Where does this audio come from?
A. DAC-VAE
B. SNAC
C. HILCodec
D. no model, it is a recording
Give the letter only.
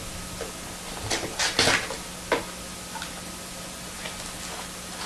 D